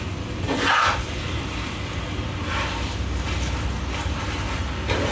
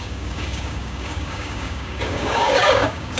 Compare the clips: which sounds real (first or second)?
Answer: first